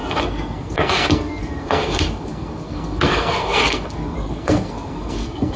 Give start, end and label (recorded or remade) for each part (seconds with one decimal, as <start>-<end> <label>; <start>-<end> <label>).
0.0-5.6 remade